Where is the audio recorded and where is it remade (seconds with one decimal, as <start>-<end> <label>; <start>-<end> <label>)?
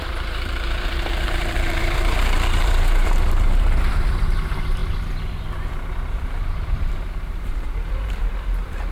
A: 0.0-4.8 remade; 4.8-7.1 recorded; 7.1-8.9 remade